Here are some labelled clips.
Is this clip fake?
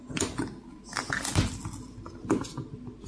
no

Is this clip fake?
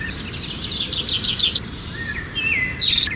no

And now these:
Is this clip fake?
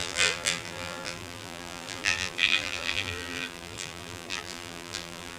yes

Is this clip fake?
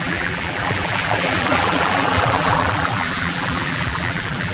yes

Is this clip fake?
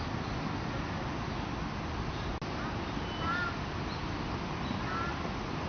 no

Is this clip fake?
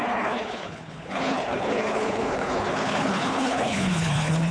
yes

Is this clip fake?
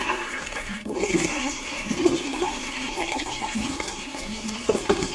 yes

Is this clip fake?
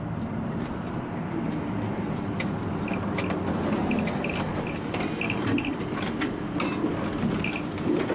no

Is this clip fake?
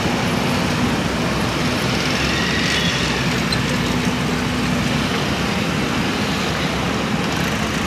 no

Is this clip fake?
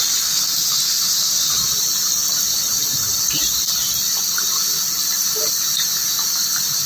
no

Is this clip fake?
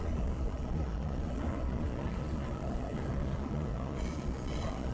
yes